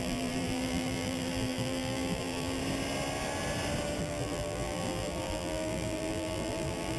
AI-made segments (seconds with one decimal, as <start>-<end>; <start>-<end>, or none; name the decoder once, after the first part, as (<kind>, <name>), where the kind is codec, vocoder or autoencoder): 0.0-2.6 (vocoder, BigVGAN v2); 4.0-7.0